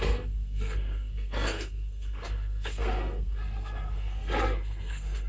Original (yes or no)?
no